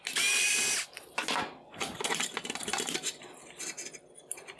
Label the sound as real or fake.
real